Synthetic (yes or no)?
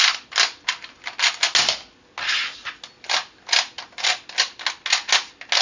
no